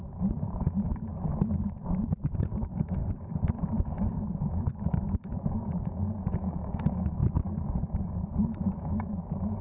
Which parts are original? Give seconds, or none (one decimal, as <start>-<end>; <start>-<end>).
1.1-2.4; 3.0-3.6; 7.2-8.1